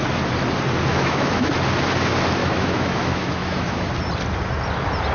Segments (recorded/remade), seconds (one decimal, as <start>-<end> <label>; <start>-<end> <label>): 0.0-0.9 recorded; 0.9-1.5 remade; 1.5-2.4 recorded; 2.4-3.9 remade; 3.9-5.1 recorded